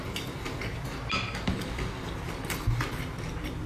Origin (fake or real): real